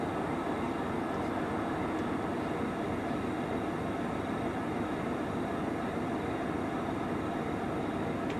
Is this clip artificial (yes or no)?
no